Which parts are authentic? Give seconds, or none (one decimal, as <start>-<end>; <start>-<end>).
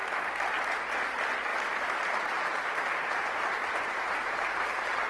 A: 0.0-1.5; 4.6-5.1